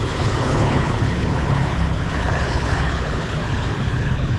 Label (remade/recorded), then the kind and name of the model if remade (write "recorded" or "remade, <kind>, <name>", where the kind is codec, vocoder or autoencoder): remade, codec, HILCodec